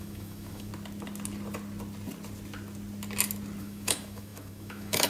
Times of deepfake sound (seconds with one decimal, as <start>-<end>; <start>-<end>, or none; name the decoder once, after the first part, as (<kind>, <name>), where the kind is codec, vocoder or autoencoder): 0.0-0.7 (autoencoder, DAC-VAE); 3.6-5.1